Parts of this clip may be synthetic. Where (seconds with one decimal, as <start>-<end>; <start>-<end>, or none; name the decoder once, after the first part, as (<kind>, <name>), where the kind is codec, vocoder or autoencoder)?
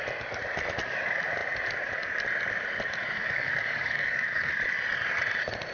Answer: 3.2-4.5 (codec, DAC)